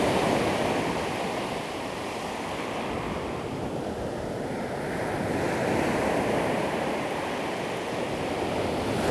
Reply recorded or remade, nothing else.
recorded